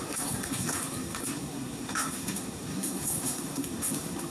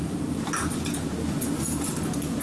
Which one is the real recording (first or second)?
second